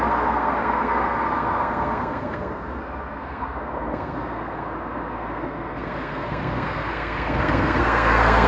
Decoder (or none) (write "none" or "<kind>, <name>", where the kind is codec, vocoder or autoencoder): codec, SNAC